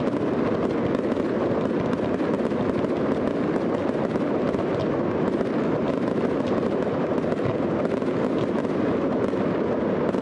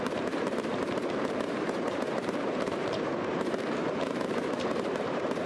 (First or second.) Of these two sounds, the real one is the first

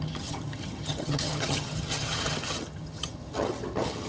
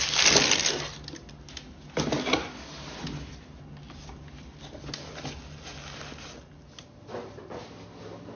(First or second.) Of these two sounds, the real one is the second